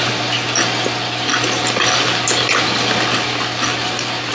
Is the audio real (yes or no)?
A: yes